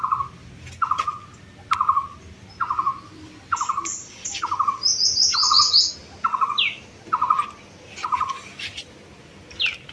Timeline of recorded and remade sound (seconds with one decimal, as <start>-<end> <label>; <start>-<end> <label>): 0.0-9.9 recorded